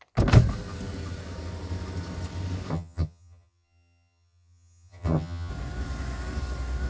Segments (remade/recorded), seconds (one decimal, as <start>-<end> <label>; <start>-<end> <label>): 0.0-2.7 recorded; 2.7-5.5 remade; 5.5-6.9 recorded